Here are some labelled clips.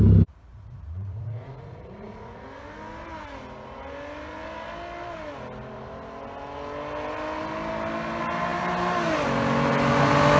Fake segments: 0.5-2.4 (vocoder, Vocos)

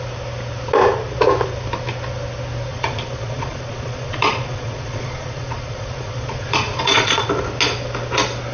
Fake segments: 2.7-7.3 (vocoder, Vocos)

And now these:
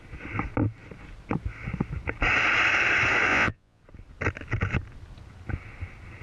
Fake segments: 3.3-3.8 (vocoder, Vocos)

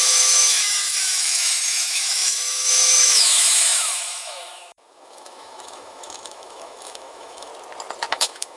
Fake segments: 0.0-7.5 (autoencoder, DAC-VAE); 8.1-8.6